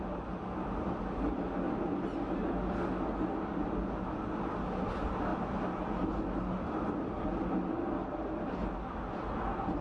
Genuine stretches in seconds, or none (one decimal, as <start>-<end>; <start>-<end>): 0.0-9.8